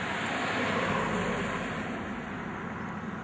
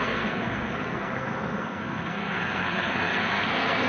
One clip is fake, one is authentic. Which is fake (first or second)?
second